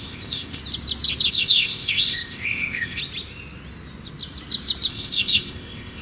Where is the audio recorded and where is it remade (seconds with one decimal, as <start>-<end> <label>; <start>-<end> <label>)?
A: 0.0-0.6 remade; 0.6-1.3 recorded; 1.3-3.0 remade; 3.0-4.9 recorded; 4.9-6.0 remade